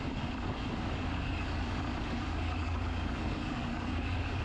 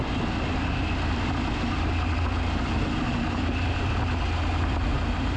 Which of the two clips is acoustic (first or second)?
second